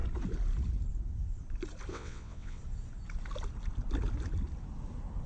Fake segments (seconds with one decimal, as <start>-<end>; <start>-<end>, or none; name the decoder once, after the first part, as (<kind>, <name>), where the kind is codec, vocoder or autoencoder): 1.9-2.6 (vocoder, WaveNeXt)